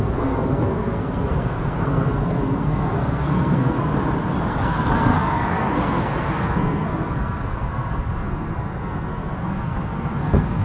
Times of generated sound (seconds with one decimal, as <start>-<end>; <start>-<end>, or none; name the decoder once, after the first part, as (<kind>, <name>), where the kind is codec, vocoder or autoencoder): 0.0-3.9 (codec, SNAC); 4.4-10.6